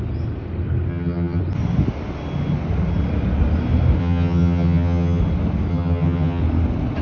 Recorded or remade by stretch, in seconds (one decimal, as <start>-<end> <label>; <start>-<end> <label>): 0.0-0.9 recorded; 0.9-1.4 remade; 1.4-4.0 recorded; 4.0-5.2 remade; 5.2-5.7 recorded; 5.7-6.4 remade; 6.4-7.0 recorded